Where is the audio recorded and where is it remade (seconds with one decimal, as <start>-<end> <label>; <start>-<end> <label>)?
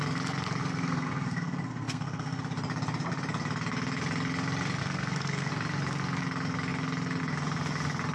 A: 0.0-0.6 recorded; 0.6-2.4 remade; 2.4-4.8 recorded; 4.8-5.5 remade; 5.5-8.1 recorded